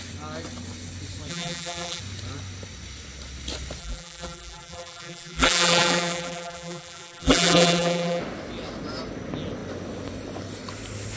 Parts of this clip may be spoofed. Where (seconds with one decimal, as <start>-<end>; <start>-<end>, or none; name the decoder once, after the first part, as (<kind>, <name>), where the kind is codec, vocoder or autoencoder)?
1.3-2.0 (vocoder, BigVGAN v2); 3.8-8.2